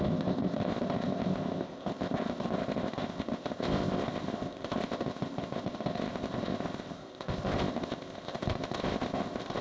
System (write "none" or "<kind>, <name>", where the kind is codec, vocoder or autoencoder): codec, ZipCodec